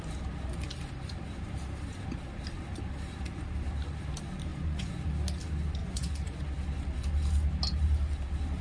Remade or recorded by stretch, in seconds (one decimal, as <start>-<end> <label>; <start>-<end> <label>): 0.0-4.5 recorded; 4.5-5.1 remade; 5.1-5.8 recorded; 5.8-6.4 remade; 6.4-8.6 recorded